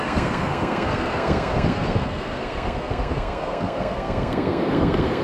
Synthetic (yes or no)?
yes